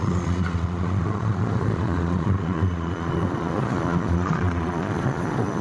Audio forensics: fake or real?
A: fake